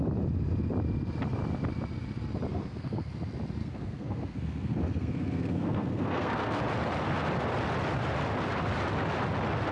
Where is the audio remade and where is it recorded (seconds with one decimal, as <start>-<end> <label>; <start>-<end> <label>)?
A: 0.0-2.5 recorded; 2.5-3.1 remade; 3.1-3.6 recorded; 3.6-6.6 remade; 6.6-9.7 recorded